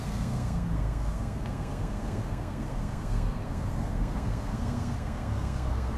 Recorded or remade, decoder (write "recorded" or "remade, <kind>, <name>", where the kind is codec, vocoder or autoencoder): remade, codec, SNAC